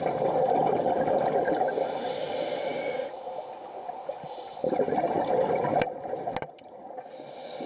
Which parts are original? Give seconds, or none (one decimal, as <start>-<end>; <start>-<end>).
0.0-7.7